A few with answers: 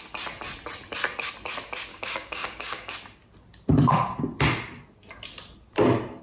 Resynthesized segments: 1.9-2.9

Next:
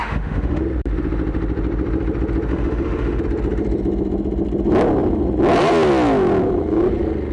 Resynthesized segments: 0.0-0.6; 2.5-3.2